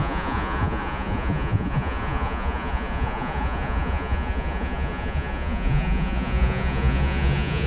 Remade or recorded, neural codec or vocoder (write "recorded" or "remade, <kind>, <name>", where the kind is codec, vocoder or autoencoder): remade, vocoder, Vocos